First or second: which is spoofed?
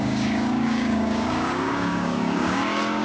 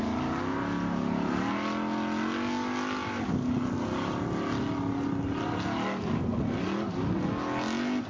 first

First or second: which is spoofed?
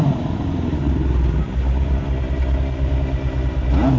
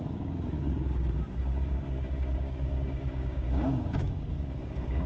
second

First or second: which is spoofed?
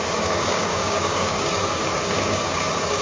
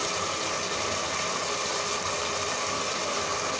first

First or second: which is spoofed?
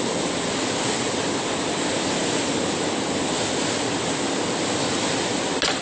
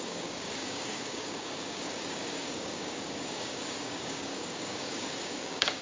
second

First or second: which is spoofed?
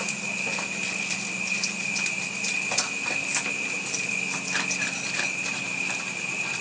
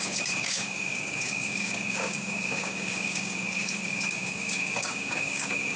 second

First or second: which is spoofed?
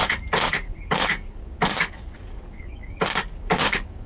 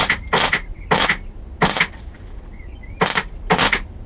first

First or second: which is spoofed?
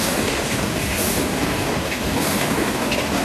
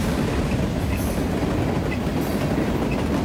first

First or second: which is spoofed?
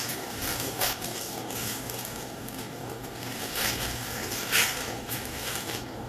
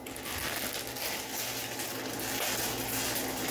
first